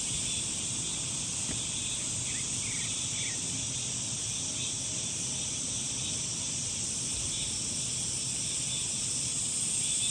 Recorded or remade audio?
recorded